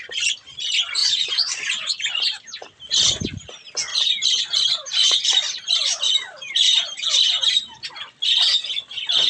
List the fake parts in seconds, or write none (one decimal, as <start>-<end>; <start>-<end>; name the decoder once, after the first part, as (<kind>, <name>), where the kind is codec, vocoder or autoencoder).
1.0-3.1 (vocoder, BigVGAN v2); 3.9-7.9